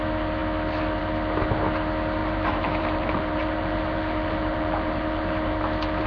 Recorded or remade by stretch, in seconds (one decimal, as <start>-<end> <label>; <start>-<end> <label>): 0.0-2.2 recorded; 2.2-5.6 remade; 5.6-6.1 recorded